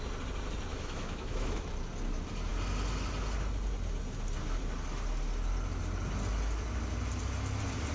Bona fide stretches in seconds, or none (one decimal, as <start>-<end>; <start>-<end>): 0.0-0.7; 1.7-7.9